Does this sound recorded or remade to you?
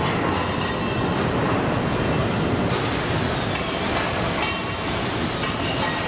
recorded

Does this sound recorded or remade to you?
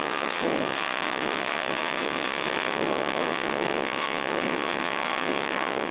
remade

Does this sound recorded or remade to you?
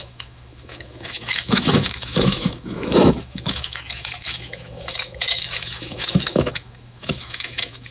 remade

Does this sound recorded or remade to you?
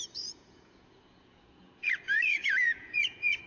remade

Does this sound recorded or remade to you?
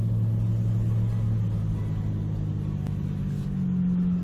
recorded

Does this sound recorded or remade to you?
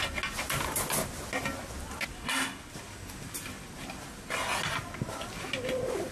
recorded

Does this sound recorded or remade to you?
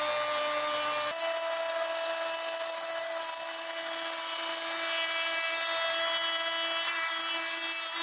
recorded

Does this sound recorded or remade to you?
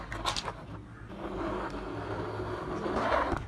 recorded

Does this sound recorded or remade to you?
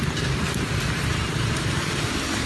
recorded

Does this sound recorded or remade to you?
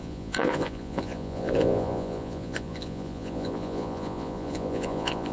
remade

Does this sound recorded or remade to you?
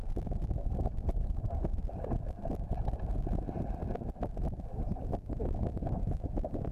recorded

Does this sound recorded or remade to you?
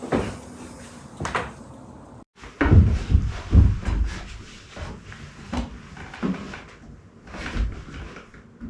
recorded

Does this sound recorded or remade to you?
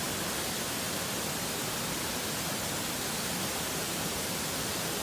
recorded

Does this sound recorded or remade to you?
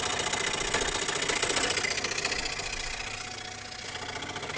recorded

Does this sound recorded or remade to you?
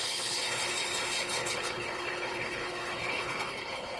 remade